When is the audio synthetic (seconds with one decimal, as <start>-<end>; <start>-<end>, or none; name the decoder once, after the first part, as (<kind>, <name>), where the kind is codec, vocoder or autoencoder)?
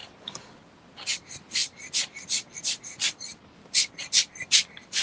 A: none